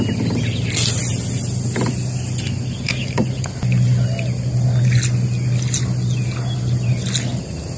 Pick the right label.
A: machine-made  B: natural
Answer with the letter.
B